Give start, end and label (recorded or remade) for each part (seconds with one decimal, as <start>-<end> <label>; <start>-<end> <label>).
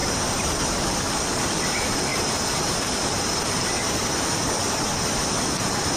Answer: 0.0-0.6 remade; 0.6-2.1 recorded; 2.1-3.9 remade; 3.9-6.0 recorded